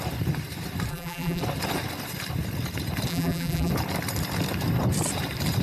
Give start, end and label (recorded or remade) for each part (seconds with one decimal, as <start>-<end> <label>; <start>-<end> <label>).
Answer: 0.0-0.9 recorded; 0.9-1.4 remade; 1.4-3.1 recorded; 3.1-3.7 remade; 3.7-5.6 recorded